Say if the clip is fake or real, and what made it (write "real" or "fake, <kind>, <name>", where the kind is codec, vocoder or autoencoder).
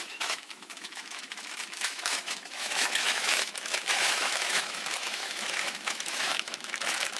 fake, autoencoder, DAC-VAE